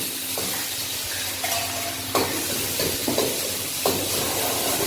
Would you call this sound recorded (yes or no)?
yes